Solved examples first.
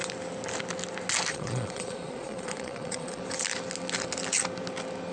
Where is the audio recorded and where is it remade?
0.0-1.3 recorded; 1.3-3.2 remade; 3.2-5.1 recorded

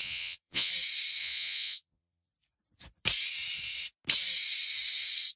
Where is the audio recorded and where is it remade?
0.0-0.7 remade; 0.7-1.2 recorded; 1.2-2.3 remade; 2.3-5.4 recorded

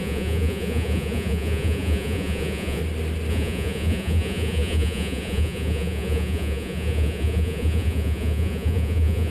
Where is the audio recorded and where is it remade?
0.0-2.8 remade; 2.8-3.3 recorded; 3.3-9.3 remade

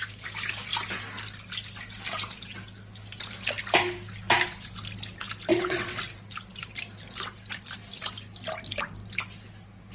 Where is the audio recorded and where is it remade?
0.0-5.5 recorded; 5.5-6.0 remade; 6.0-9.9 recorded

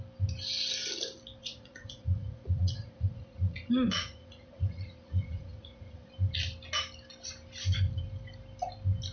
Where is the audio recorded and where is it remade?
0.0-1.4 recorded; 1.4-6.1 remade; 6.1-9.1 recorded

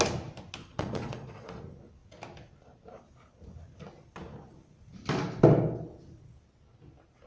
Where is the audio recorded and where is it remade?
0.0-0.6 recorded; 0.6-1.6 remade; 1.6-7.3 recorded

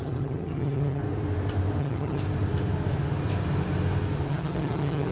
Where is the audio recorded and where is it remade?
0.0-1.0 remade; 1.0-1.8 recorded; 1.8-2.2 remade; 2.2-4.3 recorded; 4.3-5.1 remade

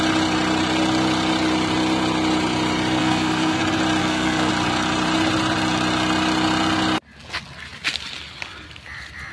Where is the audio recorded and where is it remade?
0.0-3.0 recorded; 3.0-3.6 remade; 3.6-4.0 recorded; 4.0-4.5 remade; 4.5-9.3 recorded